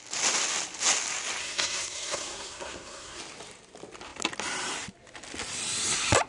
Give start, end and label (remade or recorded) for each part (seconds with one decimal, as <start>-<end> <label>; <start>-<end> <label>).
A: 0.0-1.4 recorded; 1.4-3.2 remade; 3.2-6.3 recorded